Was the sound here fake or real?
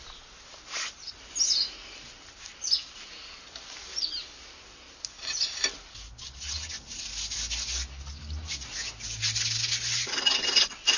real